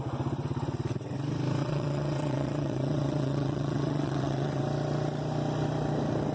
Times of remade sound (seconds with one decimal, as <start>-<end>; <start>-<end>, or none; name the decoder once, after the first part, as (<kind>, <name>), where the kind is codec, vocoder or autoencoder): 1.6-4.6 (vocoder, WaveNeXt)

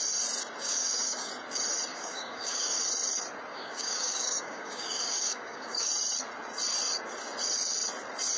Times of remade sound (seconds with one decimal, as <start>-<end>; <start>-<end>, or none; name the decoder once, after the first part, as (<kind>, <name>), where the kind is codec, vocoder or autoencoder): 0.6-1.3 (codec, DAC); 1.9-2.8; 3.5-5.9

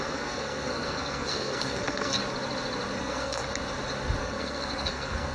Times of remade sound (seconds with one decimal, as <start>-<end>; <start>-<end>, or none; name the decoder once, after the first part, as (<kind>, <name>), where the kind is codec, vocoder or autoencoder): 0.0-2.2 (codec, SNAC); 3.0-3.4; 4.2-5.3

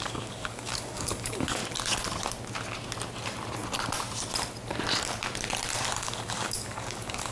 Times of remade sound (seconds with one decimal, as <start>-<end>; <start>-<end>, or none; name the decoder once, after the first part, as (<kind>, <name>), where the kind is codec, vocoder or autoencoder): 0.0-1.6 (codec, DAC); 6.0-7.3

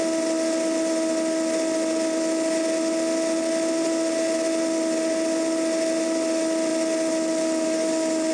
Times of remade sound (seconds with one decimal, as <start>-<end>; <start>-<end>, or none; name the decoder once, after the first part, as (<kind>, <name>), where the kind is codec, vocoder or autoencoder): none

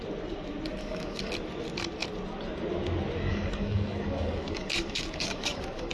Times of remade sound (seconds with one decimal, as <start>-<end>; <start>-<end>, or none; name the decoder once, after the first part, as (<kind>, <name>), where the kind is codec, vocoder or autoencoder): 0.8-1.3 (codec, DAC); 3.3-5.9

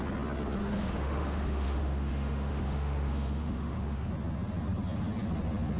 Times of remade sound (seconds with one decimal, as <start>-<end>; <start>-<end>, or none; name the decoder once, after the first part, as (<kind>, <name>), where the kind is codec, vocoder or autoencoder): 0.6-4.1 (autoencoder, DAC-VAE)

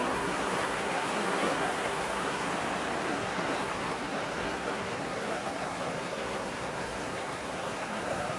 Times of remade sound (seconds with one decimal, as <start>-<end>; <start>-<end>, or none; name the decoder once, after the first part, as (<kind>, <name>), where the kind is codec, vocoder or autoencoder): 0.0-2.5 (codec, SNAC); 3.1-8.4